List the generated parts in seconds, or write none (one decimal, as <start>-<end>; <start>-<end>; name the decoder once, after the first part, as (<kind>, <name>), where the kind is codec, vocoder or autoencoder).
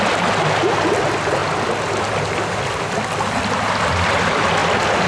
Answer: none